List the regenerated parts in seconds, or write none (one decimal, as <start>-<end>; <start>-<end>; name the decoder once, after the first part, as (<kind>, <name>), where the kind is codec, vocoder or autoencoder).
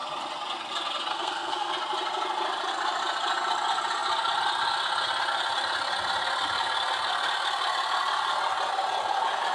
1.1-1.7 (codec, SNAC)